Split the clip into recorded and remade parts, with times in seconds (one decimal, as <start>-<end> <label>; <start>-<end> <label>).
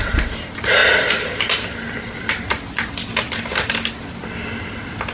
0.0-5.1 recorded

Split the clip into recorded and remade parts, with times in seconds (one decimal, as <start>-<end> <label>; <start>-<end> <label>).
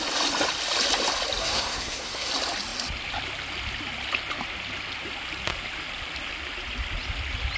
0.0-1.4 recorded; 1.4-2.3 remade; 2.3-7.6 recorded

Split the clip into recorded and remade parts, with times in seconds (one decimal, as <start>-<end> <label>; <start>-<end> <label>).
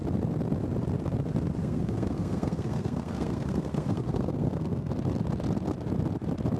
0.0-1.6 recorded; 1.6-4.9 remade; 4.9-6.6 recorded